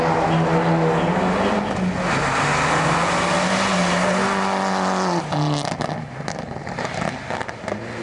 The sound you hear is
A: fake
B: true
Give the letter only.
B